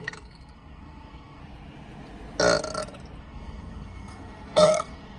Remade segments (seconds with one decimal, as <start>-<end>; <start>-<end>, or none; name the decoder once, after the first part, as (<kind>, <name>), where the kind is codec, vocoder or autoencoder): 0.0-1.4 (codec, SNAC); 3.2-5.2